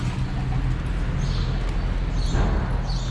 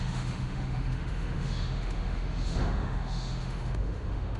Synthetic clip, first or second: second